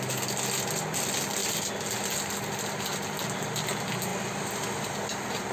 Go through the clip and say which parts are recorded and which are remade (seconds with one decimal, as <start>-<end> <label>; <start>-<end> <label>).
0.0-5.5 recorded